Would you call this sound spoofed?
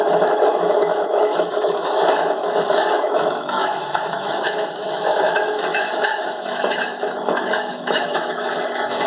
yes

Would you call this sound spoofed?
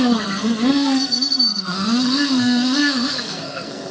yes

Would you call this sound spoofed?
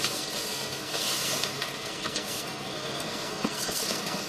yes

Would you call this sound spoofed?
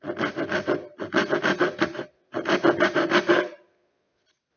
no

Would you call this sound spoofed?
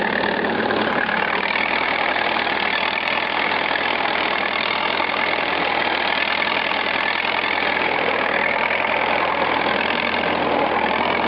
yes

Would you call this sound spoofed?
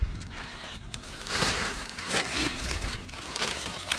yes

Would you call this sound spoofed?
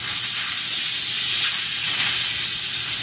no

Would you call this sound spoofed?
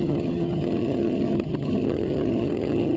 yes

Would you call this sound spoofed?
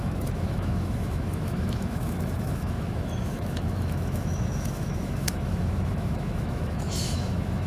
yes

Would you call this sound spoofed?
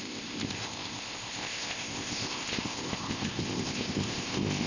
yes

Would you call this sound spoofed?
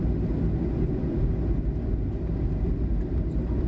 no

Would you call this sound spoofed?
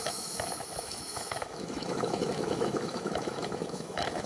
yes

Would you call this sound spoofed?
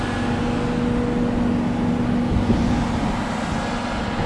no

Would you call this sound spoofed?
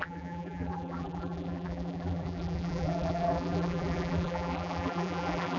yes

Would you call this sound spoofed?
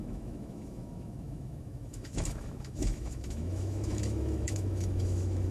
yes